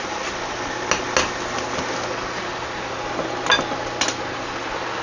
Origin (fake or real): real